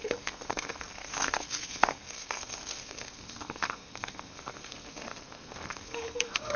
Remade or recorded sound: remade